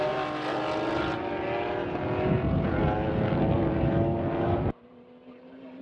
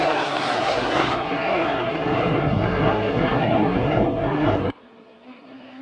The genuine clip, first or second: first